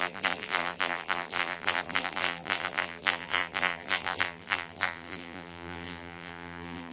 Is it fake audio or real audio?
fake